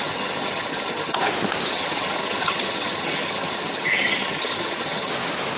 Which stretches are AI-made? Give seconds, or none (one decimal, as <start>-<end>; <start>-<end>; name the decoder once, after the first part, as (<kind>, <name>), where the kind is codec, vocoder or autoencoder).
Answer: 0.0-1.2 (vocoder, HiFi-GAN); 1.7-5.1